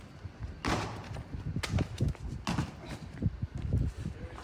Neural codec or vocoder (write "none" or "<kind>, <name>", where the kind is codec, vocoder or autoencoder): none